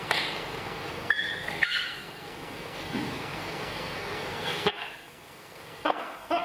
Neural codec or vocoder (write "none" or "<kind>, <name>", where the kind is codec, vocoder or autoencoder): codec, SNAC